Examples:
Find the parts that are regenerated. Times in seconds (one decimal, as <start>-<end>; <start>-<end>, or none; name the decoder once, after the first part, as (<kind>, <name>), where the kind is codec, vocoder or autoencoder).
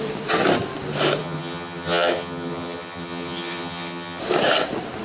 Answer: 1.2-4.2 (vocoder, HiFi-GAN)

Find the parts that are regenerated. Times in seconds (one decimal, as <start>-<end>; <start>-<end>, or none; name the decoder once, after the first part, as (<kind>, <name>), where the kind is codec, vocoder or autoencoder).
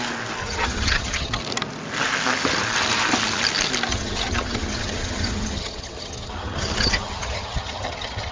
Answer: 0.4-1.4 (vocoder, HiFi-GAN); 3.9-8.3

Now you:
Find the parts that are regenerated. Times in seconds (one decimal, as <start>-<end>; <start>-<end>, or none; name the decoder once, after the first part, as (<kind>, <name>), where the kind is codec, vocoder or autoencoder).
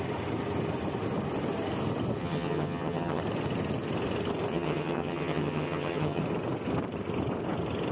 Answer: 2.2-3.2 (vocoder, HiFi-GAN); 4.5-6.2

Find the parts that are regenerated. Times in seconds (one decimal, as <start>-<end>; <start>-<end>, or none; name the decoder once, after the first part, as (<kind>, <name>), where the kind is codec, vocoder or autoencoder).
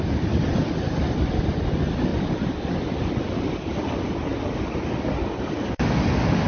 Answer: none